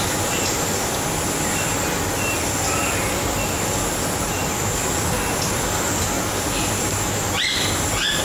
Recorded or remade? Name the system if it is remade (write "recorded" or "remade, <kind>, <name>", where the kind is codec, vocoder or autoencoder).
recorded